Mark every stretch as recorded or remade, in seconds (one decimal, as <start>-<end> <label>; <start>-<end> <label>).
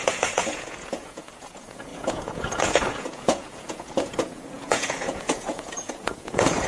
0.0-6.7 remade